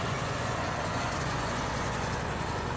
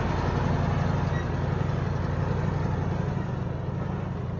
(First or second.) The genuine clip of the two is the second